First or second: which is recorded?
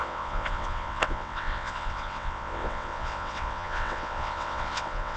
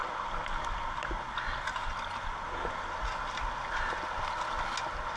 second